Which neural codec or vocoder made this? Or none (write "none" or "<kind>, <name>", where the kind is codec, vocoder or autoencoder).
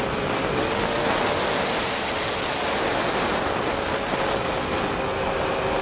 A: none